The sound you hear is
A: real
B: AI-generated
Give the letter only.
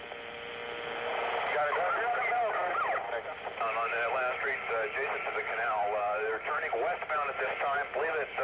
A